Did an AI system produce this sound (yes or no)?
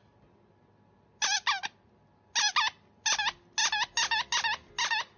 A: no